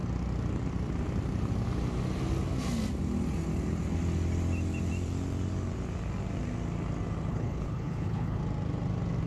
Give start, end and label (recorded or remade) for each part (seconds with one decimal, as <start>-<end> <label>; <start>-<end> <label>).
0.0-7.3 recorded; 7.3-8.4 remade; 8.4-9.3 recorded